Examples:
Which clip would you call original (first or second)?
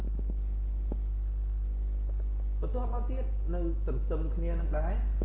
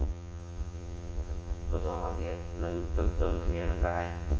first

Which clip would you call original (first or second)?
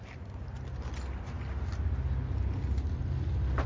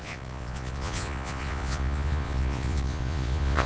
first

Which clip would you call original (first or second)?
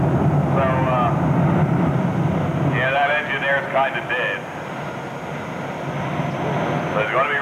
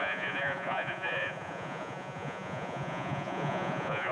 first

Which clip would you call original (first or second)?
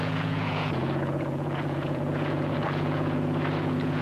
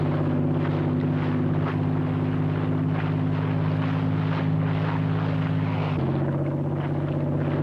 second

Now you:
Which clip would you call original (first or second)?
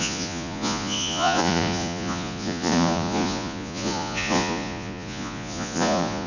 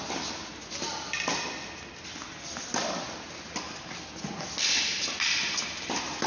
second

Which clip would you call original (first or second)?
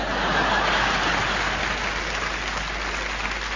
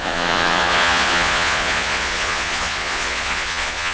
first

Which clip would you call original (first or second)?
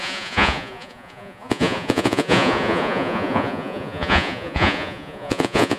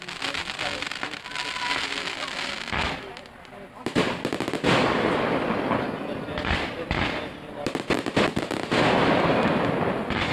second